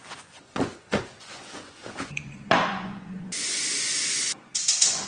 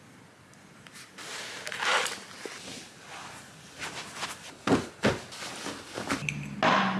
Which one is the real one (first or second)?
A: second